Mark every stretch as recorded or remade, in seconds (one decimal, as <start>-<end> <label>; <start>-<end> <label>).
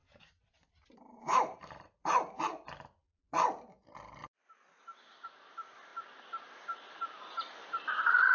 0.0-2.4 remade; 2.4-8.3 recorded